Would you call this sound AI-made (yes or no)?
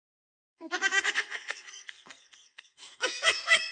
yes